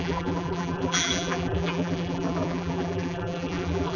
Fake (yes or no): yes